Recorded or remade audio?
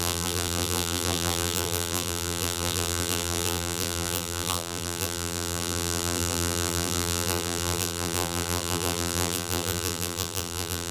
remade